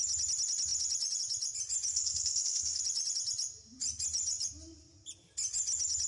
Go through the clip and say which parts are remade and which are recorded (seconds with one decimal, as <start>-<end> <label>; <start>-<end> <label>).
0.0-1.9 recorded; 1.9-2.8 remade; 2.8-6.1 recorded

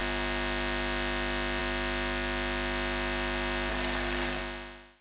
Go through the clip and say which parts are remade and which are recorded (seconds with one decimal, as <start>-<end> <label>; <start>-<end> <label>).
0.0-3.7 recorded; 3.7-4.4 remade; 4.4-5.0 recorded

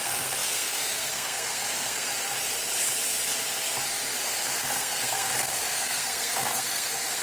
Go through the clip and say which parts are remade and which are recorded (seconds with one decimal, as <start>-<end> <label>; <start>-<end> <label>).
0.0-2.1 remade; 2.1-4.2 recorded; 4.2-7.2 remade

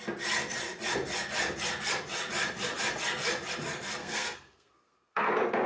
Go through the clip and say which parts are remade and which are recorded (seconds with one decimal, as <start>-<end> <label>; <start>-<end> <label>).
0.0-4.0 recorded; 4.0-5.3 remade; 5.3-5.7 recorded